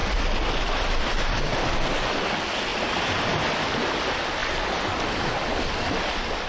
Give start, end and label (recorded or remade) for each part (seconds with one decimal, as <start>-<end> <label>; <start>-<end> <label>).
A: 0.0-6.5 recorded